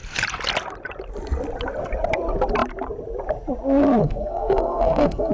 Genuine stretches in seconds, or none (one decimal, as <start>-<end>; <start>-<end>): 0.0-4.0